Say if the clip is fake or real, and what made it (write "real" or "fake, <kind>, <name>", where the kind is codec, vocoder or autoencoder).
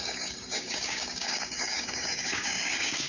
fake, codec, DAC